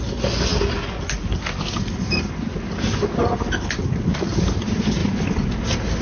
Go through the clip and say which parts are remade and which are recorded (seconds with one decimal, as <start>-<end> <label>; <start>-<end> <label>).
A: 0.0-3.2 recorded; 3.2-4.2 remade; 4.2-6.0 recorded